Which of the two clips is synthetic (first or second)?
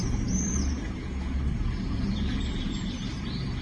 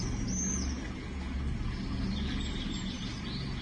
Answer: first